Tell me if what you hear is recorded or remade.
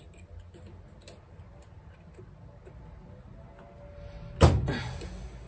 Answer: recorded